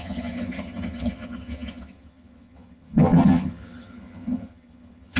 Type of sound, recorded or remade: remade